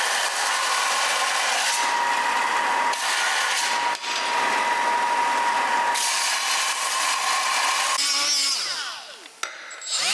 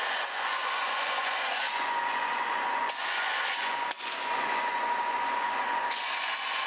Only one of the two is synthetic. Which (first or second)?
second